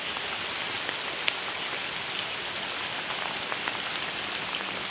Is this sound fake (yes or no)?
no